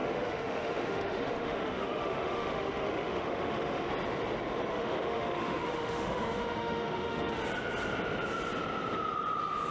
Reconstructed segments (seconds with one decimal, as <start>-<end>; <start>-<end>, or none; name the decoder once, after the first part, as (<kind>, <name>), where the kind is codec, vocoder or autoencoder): 0.0-3.9 (autoencoder, DAC-VAE); 4.7-7.4